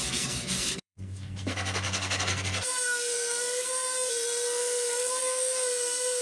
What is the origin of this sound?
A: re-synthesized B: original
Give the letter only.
A